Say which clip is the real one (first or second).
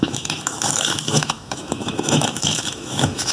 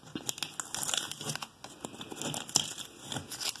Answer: second